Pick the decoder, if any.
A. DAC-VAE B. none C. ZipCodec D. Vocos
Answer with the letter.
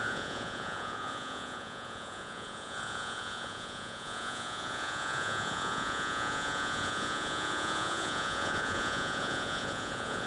D